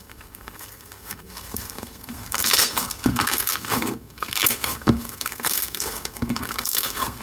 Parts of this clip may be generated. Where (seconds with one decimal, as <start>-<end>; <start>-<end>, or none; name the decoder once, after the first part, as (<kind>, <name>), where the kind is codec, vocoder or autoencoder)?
0.0-7.2 (codec, SNAC)